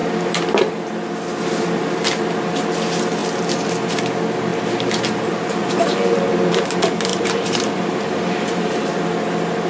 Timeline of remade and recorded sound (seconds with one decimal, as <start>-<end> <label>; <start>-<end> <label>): 0.0-4.5 recorded; 4.5-6.0 remade; 6.0-7.1 recorded; 7.1-8.9 remade; 8.9-9.7 recorded